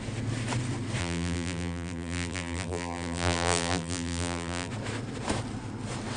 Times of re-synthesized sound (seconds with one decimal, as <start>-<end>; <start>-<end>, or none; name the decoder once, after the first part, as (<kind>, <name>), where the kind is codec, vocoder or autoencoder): 1.0-4.7 (vocoder, BigVGAN v2)